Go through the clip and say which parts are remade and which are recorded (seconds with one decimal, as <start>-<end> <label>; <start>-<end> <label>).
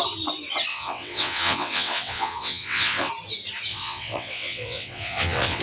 0.0-0.7 recorded; 0.7-3.1 remade; 3.1-3.7 recorded; 3.7-5.6 remade